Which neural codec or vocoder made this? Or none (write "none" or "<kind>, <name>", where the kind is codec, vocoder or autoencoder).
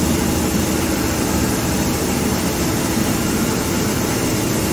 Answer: vocoder, BigVGAN v2